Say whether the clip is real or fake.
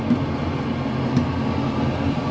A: real